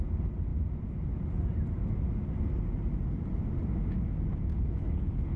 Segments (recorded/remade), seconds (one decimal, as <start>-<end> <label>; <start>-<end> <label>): 0.0-4.5 recorded; 4.5-5.4 remade